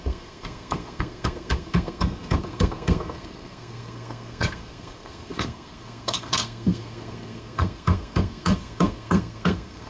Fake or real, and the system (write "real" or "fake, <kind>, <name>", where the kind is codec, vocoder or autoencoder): fake, codec, SNAC